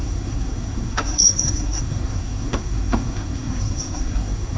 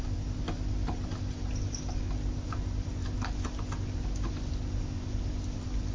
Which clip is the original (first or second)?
second